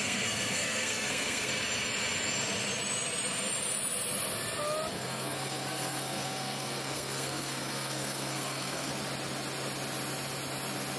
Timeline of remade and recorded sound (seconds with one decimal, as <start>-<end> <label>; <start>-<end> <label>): 0.0-1.5 remade; 1.5-4.9 recorded; 4.9-8.9 remade; 8.9-11.0 recorded